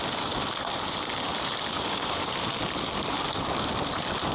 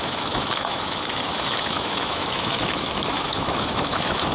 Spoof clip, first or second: second